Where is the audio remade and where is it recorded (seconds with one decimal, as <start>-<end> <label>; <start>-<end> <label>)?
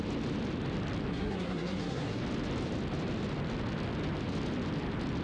0.0-1.1 recorded; 1.1-2.2 remade; 2.2-5.2 recorded